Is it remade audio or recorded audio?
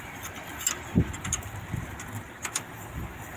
recorded